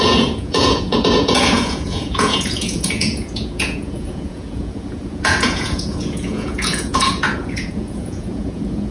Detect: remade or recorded remade